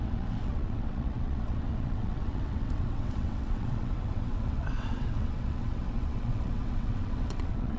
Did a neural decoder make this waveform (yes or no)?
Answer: yes